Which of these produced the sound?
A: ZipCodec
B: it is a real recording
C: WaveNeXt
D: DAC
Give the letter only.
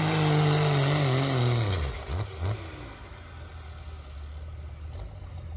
B